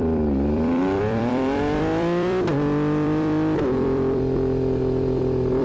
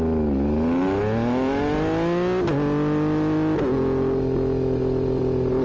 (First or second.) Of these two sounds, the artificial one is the first